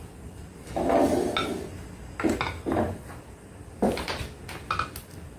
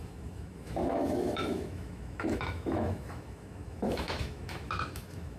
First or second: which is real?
first